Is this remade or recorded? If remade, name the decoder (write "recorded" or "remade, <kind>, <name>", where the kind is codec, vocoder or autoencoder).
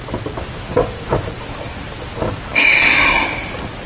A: recorded